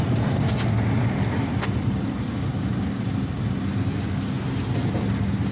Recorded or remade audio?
recorded